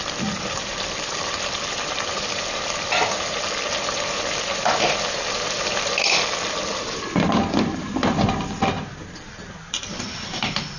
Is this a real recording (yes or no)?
no